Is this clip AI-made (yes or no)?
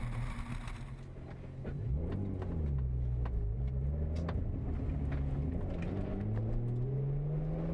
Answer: no